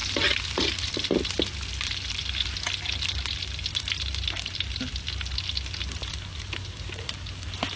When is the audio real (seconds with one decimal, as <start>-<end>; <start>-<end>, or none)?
0.0-7.8